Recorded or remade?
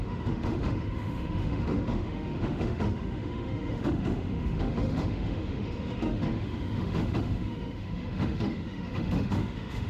remade